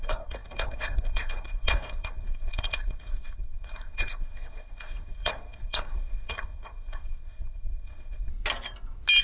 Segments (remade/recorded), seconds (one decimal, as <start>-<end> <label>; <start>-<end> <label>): 0.0-8.3 remade; 8.3-9.2 recorded

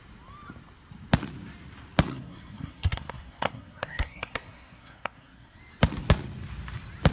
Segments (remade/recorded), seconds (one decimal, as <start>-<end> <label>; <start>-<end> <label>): 0.0-2.1 recorded; 2.1-5.6 remade; 5.6-7.1 recorded

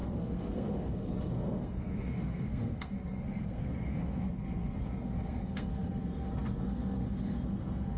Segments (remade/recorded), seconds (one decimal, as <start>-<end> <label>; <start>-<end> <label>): 0.0-8.0 remade

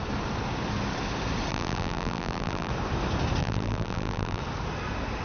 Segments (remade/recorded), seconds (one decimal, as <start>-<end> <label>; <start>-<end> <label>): 0.0-1.5 recorded; 1.5-2.7 remade; 2.7-3.4 recorded; 3.4-4.4 remade; 4.4-5.2 recorded

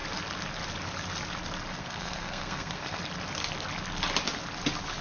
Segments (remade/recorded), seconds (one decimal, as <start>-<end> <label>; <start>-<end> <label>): 0.0-1.8 recorded; 1.8-3.0 remade; 3.0-5.0 recorded

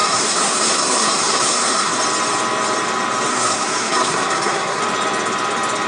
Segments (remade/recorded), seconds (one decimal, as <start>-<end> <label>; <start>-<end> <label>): 0.0-2.0 remade; 2.0-3.3 recorded; 3.3-4.8 remade; 4.8-5.9 recorded

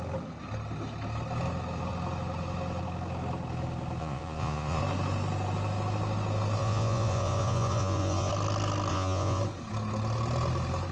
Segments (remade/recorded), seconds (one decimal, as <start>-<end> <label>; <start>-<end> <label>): 0.0-4.0 recorded; 4.0-4.8 remade; 4.8-6.6 recorded; 6.6-8.3 remade; 8.3-8.9 recorded; 8.9-9.4 remade; 9.4-10.9 recorded